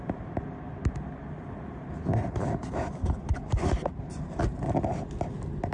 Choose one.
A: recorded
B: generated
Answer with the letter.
A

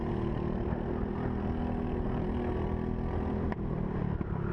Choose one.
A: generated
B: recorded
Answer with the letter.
B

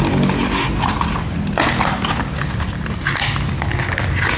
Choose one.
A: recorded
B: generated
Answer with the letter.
A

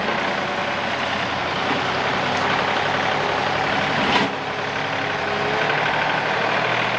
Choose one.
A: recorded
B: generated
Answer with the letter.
A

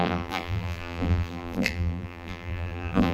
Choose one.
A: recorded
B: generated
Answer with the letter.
B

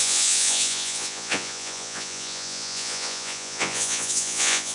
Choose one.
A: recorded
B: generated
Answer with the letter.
B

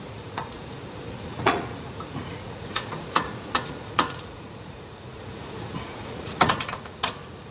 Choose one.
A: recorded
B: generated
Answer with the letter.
B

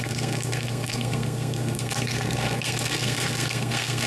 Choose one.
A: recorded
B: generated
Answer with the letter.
B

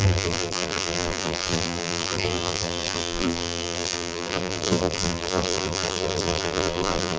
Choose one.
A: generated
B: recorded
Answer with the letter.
A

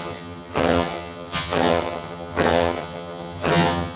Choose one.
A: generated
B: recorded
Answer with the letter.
A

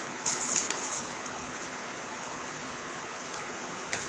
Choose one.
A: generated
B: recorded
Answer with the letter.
A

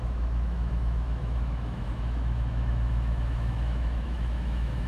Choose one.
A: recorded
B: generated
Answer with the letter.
B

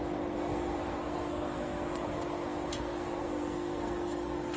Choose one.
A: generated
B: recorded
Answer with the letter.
A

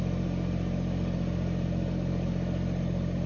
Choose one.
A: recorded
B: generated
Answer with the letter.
A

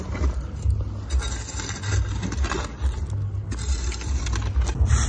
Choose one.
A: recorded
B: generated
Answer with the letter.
A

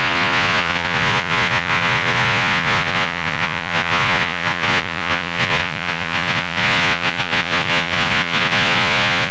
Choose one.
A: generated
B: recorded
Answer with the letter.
A